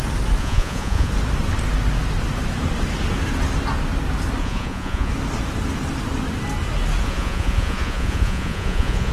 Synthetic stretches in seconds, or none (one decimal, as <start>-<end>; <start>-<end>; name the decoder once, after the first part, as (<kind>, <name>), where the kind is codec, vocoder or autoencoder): 0.4-1.1 (vocoder, Vocos); 4.4-5.1; 7.0-9.1